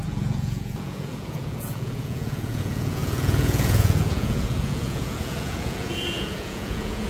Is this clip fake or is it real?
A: fake